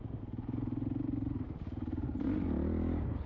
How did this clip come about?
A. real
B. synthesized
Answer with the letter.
A